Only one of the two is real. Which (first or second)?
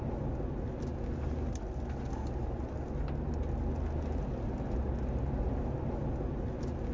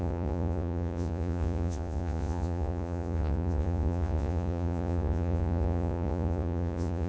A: first